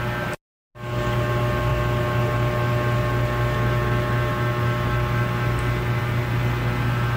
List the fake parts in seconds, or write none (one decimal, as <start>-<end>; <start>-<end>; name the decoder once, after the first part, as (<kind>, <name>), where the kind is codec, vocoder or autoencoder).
none